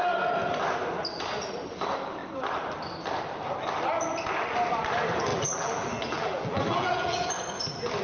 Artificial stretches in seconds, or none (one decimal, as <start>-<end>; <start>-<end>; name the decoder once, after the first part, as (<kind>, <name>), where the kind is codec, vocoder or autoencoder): 5.3-7.3 (vocoder, BigVGAN v2)